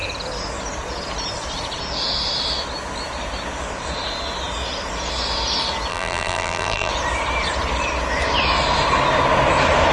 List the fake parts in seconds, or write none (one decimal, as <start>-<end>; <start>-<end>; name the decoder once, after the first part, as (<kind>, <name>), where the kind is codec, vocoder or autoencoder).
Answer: 5.9-6.9 (vocoder, BigVGAN v2)